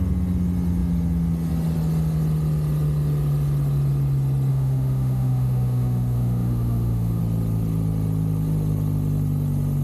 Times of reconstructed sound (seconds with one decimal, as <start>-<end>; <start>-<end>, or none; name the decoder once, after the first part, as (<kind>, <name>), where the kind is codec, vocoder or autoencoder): 4.5-7.2 (autoencoder, DAC-VAE)